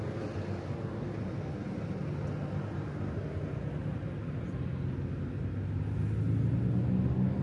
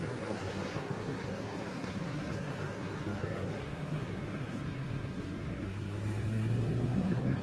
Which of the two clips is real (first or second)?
first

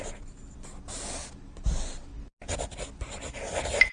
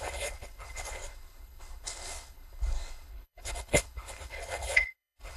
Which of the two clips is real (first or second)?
first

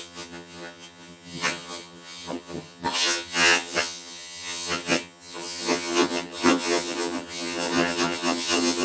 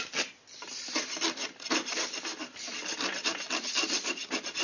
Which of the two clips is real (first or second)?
second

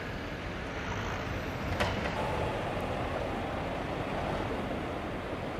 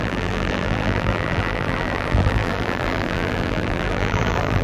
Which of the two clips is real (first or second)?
first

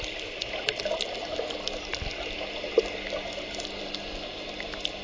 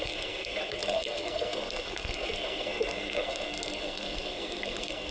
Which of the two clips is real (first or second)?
first